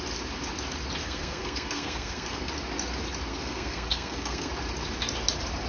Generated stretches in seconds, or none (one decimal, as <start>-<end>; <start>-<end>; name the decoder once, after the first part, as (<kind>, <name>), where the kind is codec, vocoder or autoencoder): 1.0-2.5 (codec, SNAC); 3.3-4.5

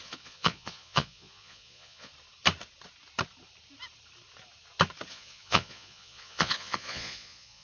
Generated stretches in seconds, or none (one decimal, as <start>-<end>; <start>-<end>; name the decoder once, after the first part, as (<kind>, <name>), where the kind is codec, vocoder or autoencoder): 0.0-2.1 (vocoder, Vocos); 5.1-7.6